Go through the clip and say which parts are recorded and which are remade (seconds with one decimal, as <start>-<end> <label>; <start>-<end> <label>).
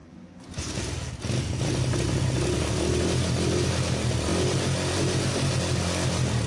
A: 0.0-0.7 remade; 0.7-6.5 recorded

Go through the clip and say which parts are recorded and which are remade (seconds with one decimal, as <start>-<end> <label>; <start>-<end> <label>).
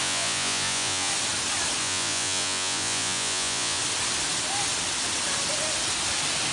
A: 0.0-1.1 remade; 1.1-1.8 recorded; 1.8-3.8 remade; 3.8-6.5 recorded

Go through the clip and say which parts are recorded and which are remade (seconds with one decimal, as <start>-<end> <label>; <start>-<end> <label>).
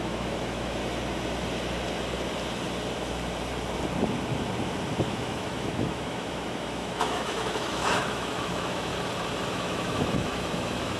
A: 0.0-0.8 remade; 0.8-5.0 recorded; 5.0-8.9 remade; 8.9-9.5 recorded; 9.5-11.0 remade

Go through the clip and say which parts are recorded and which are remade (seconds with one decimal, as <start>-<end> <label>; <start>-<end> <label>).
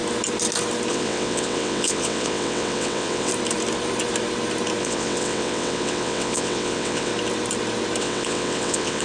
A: 0.0-0.9 recorded; 0.9-3.3 remade; 3.3-4.8 recorded; 4.8-7.1 remade; 7.1-8.0 recorded; 8.0-9.0 remade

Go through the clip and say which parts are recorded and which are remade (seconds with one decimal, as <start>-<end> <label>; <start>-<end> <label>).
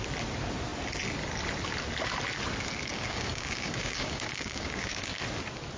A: 0.0-2.9 recorded; 2.9-5.2 remade; 5.2-5.8 recorded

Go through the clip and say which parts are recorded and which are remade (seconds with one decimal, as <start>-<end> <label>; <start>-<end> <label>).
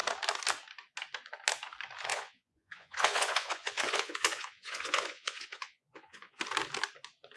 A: 0.0-2.1 recorded; 2.1-6.4 remade; 6.4-7.4 recorded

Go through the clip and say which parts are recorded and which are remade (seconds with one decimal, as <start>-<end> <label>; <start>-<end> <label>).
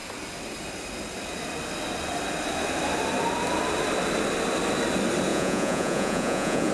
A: 0.0-5.3 recorded; 5.3-6.7 remade